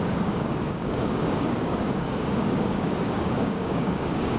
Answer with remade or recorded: remade